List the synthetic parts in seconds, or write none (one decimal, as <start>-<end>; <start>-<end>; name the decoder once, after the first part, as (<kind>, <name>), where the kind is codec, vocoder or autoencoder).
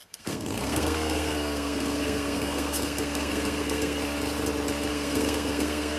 0.0-4.0 (codec, SNAC); 4.9-6.0